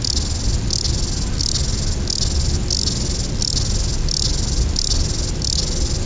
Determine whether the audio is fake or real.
real